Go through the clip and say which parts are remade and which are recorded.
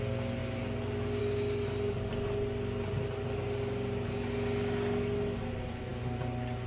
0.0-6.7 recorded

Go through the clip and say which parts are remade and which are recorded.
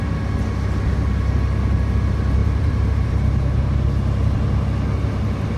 0.0-2.4 recorded; 2.4-3.1 remade; 3.1-5.6 recorded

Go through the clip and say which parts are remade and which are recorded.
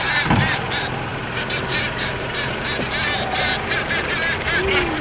0.0-5.0 recorded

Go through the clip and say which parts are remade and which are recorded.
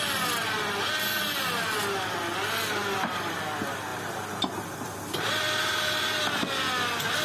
0.0-2.8 recorded; 2.8-3.4 remade; 3.4-3.9 recorded; 3.9-5.4 remade; 5.4-7.2 recorded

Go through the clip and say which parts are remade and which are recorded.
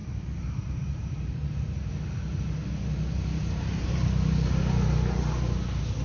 0.0-1.9 remade; 1.9-3.4 recorded; 3.4-4.6 remade; 4.6-6.0 recorded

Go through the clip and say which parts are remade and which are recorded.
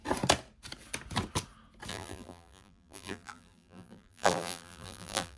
0.0-1.9 recorded; 1.9-5.4 remade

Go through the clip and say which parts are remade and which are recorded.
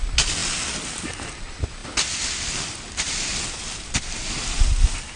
0.0-5.2 recorded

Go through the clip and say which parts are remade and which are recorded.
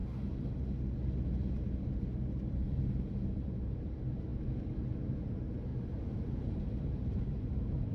0.0-2.5 recorded; 2.5-4.3 remade; 4.3-5.2 recorded; 5.2-5.7 remade; 5.7-6.4 recorded; 6.4-7.9 remade